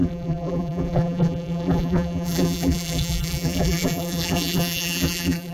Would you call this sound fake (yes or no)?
yes